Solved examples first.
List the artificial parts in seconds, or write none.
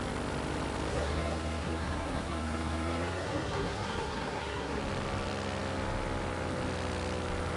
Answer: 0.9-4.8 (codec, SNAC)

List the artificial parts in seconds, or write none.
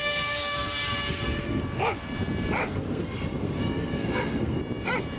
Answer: 0.0-1.6 (codec, SNAC); 2.6-4.6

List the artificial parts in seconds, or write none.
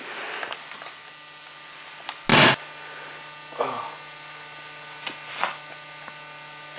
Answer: none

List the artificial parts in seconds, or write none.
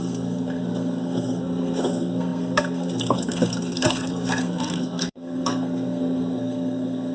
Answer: 0.0-7.1 (codec, SNAC)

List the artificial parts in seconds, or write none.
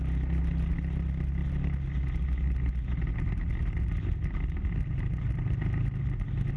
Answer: none